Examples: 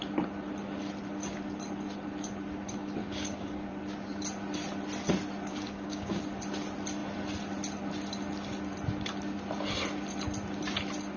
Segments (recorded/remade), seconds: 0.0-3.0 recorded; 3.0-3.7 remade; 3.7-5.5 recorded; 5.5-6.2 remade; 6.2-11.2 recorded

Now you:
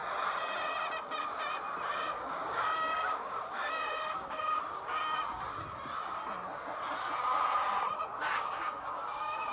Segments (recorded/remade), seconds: 0.0-1.9 recorded; 1.9-4.6 remade; 4.6-8.2 recorded; 8.2-9.5 remade